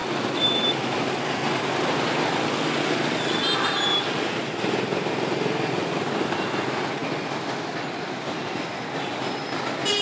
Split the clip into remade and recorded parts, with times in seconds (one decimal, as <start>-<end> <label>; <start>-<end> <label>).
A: 0.0-10.0 recorded